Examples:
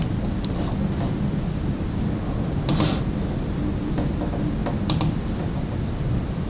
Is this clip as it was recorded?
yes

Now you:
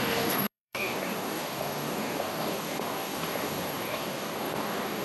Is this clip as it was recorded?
no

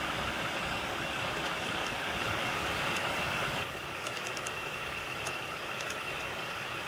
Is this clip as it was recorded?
no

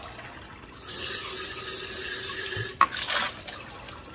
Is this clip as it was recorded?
yes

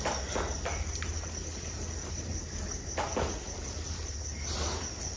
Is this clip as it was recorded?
yes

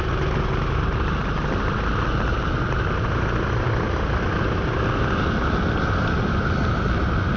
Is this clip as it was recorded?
yes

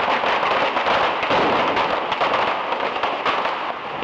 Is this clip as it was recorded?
yes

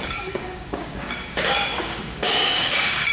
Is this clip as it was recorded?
no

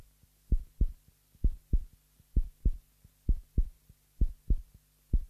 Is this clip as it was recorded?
yes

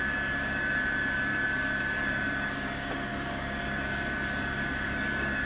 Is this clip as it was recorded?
no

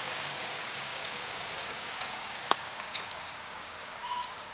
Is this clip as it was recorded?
no